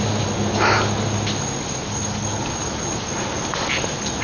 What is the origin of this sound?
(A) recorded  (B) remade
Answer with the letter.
A